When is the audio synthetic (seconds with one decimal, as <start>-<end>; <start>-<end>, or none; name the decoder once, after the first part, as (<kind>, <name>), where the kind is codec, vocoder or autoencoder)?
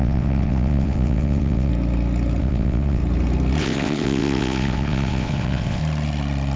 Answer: 0.0-1.7 (vocoder, WaveNeXt); 2.4-3.0; 3.6-5.8